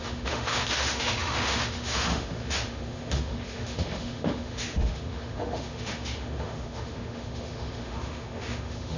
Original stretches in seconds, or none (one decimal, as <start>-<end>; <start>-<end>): none